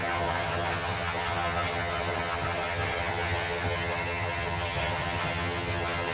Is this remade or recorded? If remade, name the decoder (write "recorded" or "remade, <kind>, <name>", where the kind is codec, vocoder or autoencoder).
remade, vocoder, HiFi-GAN